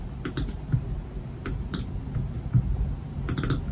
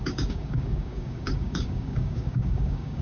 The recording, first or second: first